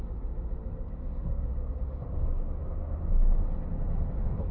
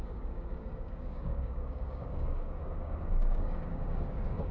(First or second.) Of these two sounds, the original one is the first